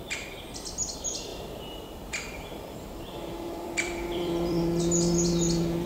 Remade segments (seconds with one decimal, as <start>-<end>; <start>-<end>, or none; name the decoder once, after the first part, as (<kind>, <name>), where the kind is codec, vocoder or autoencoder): 1.3-4.8 (vocoder, BigVGAN v2)